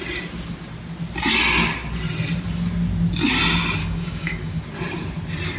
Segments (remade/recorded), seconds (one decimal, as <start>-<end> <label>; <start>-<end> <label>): 0.0-3.8 recorded; 3.8-4.6 remade; 4.6-5.6 recorded